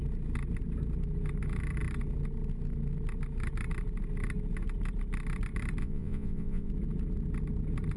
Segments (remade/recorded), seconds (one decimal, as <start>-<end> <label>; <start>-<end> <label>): 0.0-5.8 recorded; 5.8-6.7 remade; 6.7-8.0 recorded